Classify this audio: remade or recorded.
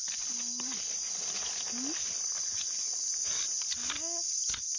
recorded